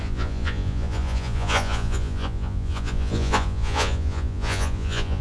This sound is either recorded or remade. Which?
remade